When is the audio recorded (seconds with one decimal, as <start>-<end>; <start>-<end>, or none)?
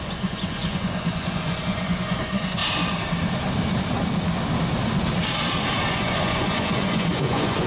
2.6-5.9